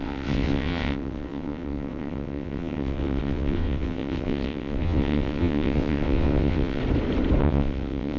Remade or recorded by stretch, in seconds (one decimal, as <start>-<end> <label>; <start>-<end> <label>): 0.0-6.8 remade; 6.8-7.4 recorded; 7.4-8.2 remade

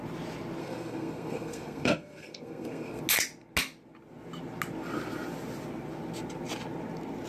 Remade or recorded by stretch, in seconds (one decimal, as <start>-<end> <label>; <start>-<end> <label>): 0.0-0.6 recorded; 0.6-3.0 remade; 3.0-7.3 recorded

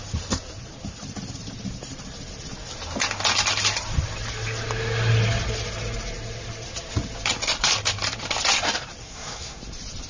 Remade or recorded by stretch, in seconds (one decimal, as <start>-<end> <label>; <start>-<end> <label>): 0.0-9.0 recorded; 9.0-9.6 remade; 9.6-10.1 recorded

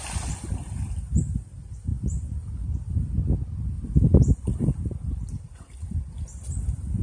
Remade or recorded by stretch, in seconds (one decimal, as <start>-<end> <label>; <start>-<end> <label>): 0.0-7.0 recorded